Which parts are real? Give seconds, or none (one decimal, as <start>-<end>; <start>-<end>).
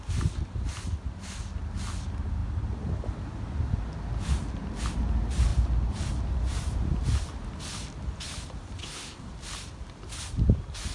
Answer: 0.0-8.8; 9.3-10.9